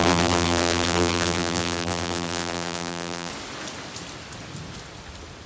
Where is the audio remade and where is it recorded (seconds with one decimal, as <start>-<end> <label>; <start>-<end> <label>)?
0.0-3.3 remade; 3.3-5.5 recorded